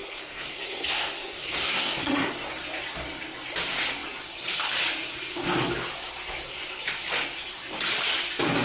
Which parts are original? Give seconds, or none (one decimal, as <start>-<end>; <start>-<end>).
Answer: 2.3-8.6